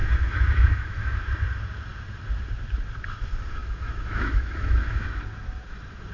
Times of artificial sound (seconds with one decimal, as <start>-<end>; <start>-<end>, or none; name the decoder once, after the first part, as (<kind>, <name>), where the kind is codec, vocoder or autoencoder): 0.0-1.3 (autoencoder, DAC-VAE); 3.6-5.2